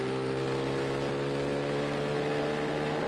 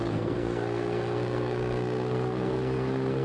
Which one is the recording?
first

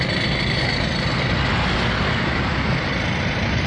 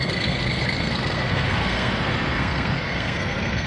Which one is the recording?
first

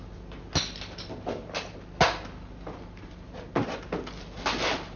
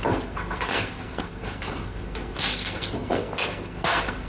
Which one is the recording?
first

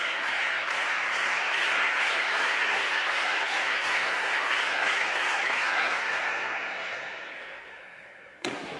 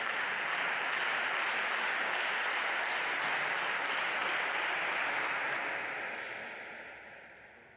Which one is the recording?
second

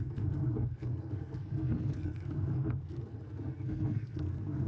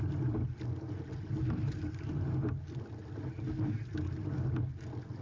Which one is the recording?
second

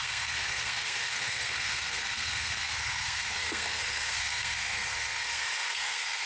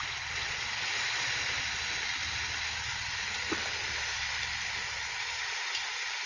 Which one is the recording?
second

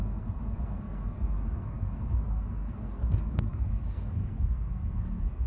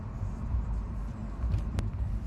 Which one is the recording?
second